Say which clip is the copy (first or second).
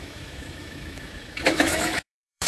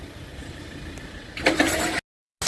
first